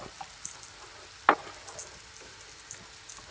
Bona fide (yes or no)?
yes